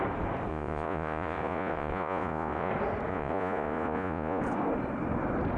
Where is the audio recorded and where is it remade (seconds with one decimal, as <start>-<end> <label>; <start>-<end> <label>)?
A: 0.0-0.5 recorded; 0.5-2.7 remade; 2.7-3.1 recorded; 3.1-4.4 remade; 4.4-5.6 recorded